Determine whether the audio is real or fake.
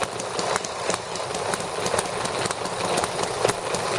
real